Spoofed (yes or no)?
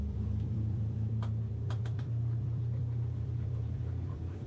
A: yes